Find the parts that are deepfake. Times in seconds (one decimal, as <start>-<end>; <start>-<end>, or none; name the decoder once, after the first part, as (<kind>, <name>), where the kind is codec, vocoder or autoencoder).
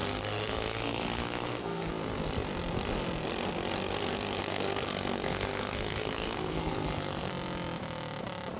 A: 0.0-1.9 (codec, SNAC); 4.4-7.3